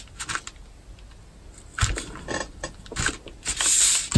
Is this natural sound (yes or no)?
yes